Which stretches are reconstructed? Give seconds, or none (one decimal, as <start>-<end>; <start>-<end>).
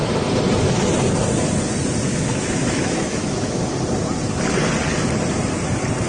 2.1-3.7